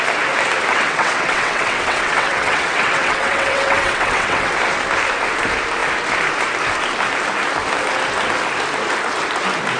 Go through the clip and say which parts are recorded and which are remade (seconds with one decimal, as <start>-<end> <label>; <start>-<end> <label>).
0.0-0.7 recorded; 0.7-4.5 remade; 4.5-9.8 recorded